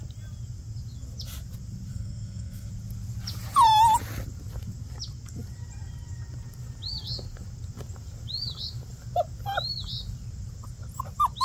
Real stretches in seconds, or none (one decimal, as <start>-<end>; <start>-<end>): 0.0-1.9; 2.7-11.4